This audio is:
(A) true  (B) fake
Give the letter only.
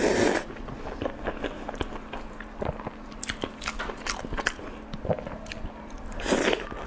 A